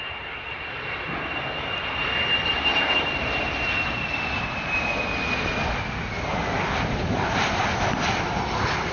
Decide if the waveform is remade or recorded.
recorded